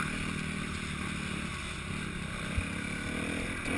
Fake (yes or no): no